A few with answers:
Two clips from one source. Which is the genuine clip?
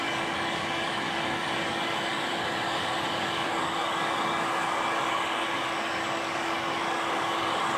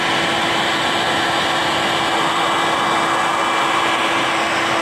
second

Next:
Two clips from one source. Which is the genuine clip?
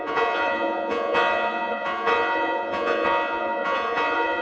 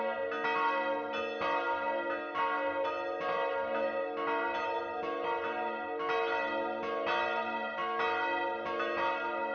second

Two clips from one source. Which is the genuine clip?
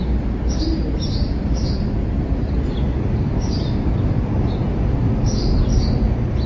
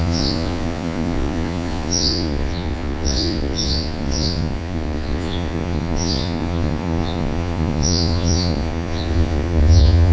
first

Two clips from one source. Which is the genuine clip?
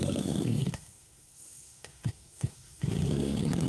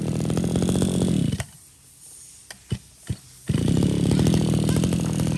second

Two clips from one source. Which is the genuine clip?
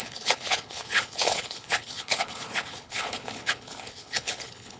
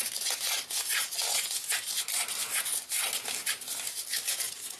second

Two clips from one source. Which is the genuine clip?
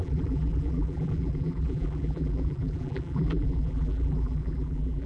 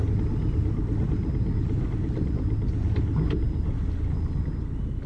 second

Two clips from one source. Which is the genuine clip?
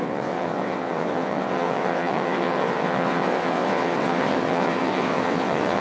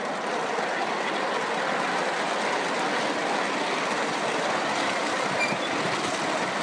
second